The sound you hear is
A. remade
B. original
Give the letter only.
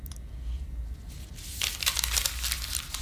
B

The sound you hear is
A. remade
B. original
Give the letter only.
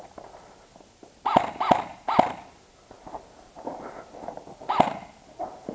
B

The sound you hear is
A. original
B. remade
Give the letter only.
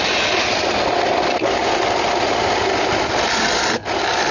A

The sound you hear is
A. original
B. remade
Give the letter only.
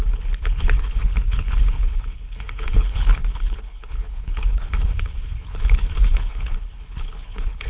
B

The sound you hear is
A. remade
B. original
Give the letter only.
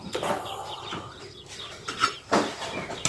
B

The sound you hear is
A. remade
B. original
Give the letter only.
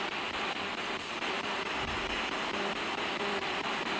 A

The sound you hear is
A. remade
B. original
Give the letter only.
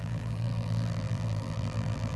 A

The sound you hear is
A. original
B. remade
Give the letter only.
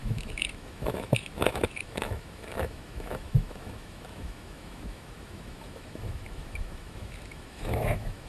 B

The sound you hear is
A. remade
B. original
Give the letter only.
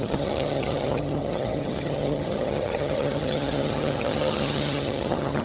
A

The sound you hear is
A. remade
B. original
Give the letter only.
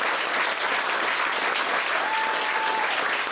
B